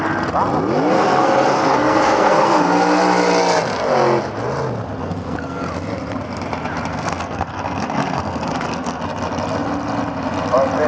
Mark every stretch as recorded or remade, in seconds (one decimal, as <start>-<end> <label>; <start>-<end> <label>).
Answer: 0.0-0.9 recorded; 0.9-2.6 remade; 2.6-5.0 recorded; 5.0-5.7 remade; 5.7-6.9 recorded; 6.9-9.0 remade; 9.0-10.9 recorded